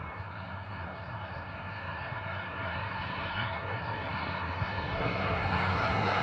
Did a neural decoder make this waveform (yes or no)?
yes